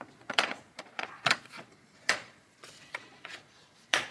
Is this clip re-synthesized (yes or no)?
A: yes